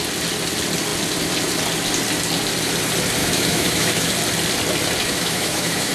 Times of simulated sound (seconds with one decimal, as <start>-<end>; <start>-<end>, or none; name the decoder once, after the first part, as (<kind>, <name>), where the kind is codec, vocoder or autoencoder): 3.2-4.1 (autoencoder, DAC-VAE); 5.0-5.9